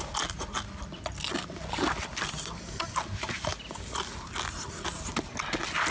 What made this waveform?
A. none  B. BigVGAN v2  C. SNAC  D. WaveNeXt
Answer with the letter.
A